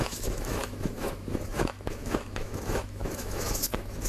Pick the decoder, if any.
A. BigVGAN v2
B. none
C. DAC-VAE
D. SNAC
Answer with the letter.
C